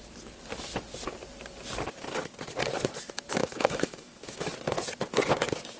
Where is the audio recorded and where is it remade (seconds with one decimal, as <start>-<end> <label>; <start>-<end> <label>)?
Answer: 0.0-3.4 recorded; 3.4-4.5 remade; 4.5-5.8 recorded